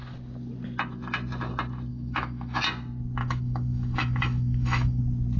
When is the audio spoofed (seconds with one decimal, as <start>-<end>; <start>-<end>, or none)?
1.9-2.6; 3.2-5.0